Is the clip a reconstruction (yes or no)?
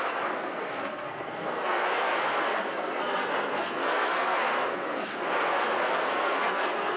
yes